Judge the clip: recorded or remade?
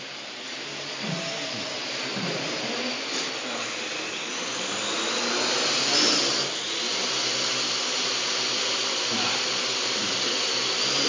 recorded